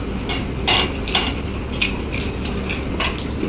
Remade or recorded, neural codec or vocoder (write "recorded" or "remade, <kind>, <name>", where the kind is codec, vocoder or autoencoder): recorded